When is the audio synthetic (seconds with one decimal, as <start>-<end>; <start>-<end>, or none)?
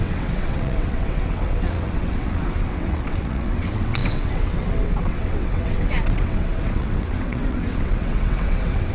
0.0-8.9